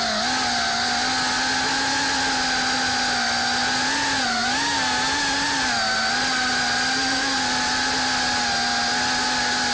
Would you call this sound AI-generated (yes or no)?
no